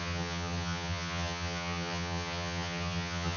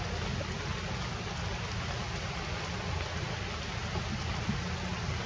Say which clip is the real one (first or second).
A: second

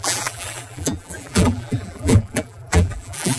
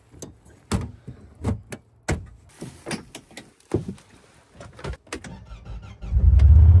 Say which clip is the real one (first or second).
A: second